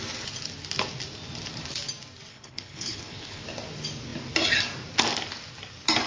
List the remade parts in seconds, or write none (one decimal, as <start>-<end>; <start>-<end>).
2.3-3.4